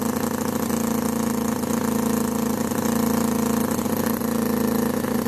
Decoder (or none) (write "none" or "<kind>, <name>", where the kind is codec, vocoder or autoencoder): none